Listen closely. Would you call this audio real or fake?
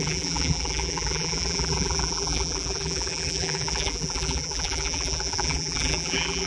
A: fake